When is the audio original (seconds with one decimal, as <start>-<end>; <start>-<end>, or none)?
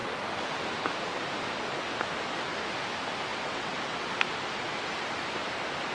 0.0-3.3; 4.1-5.9